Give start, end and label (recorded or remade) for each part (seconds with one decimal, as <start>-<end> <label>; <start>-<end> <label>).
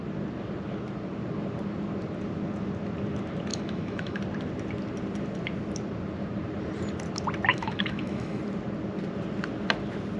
0.0-3.5 recorded; 3.5-4.2 remade; 4.2-7.5 recorded; 7.5-8.4 remade; 8.4-10.2 recorded